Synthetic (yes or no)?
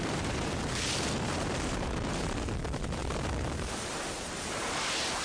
yes